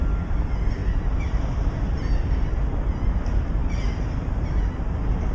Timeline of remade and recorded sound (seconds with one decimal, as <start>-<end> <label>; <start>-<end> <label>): 0.0-5.3 recorded